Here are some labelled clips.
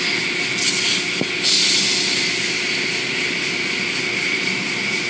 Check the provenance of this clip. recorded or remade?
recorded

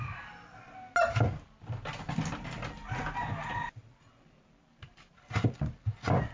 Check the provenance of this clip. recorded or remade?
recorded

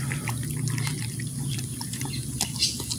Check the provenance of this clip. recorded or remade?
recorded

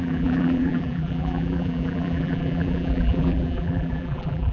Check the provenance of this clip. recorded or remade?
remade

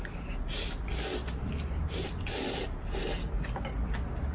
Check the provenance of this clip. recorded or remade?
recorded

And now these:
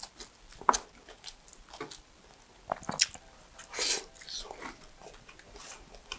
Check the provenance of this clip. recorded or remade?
recorded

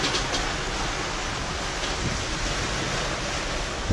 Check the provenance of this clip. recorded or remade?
recorded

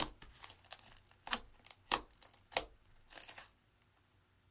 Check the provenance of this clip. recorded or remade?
recorded